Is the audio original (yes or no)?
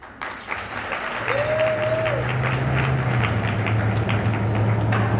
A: yes